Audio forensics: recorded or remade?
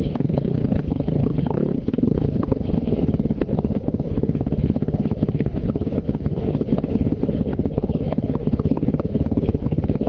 remade